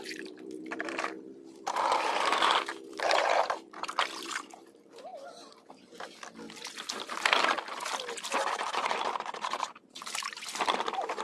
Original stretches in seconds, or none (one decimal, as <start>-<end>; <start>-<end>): 5.1-8.5